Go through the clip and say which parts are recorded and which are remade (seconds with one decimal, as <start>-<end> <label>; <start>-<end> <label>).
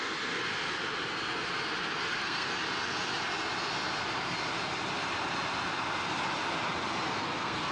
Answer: 0.0-0.5 remade; 0.5-2.0 recorded; 2.0-2.5 remade; 2.5-7.1 recorded; 7.1-7.7 remade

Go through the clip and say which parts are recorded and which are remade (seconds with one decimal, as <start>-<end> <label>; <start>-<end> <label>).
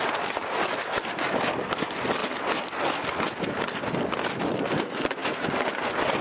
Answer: 0.0-6.2 recorded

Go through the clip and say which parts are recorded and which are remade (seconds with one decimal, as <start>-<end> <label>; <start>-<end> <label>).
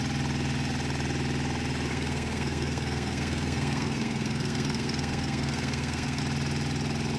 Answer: 0.0-1.9 recorded; 1.9-6.2 remade; 6.2-7.2 recorded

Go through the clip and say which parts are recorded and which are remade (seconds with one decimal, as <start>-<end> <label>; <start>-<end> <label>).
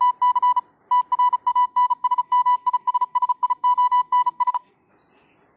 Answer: 0.0-1.5 recorded; 1.5-4.9 remade; 4.9-5.6 recorded